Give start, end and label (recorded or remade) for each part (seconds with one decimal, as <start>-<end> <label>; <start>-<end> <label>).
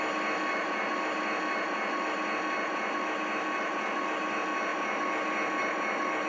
0.0-6.3 recorded